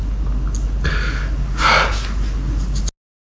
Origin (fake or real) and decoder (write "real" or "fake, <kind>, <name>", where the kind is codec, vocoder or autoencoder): real